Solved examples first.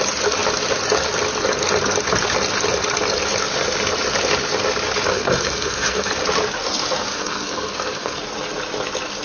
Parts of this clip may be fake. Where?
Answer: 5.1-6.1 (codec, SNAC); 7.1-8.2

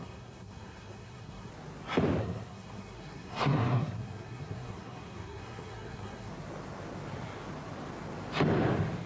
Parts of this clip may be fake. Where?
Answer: 0.0-1.5 (codec, SNAC); 2.2-6.3

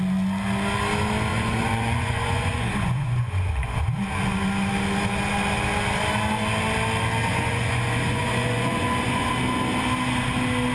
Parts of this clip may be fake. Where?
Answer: 1.3-3.8 (vocoder, Vocos); 7.3-9.3

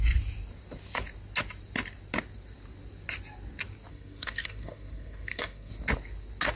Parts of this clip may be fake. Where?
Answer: 3.9-5.7 (codec, SNAC)

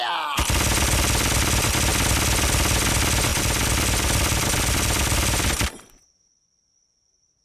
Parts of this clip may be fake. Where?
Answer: 3.3-6.1 (vocoder, BigVGAN v2)

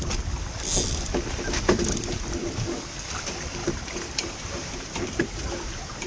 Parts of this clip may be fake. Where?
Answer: 3.6-6.1 (vocoder, BigVGAN v2)